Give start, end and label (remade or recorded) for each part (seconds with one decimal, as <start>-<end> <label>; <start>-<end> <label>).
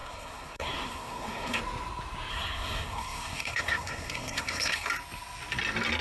0.0-1.6 remade; 1.6-2.3 recorded; 2.3-4.9 remade; 4.9-6.0 recorded